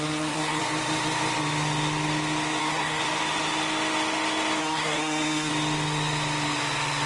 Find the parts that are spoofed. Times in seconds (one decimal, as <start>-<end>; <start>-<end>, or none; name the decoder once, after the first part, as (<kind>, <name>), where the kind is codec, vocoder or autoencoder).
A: 0.0-0.6 (codec, SNAC); 2.6-3.0; 4.6-5.5